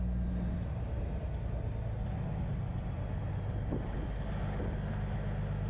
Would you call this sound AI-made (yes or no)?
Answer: no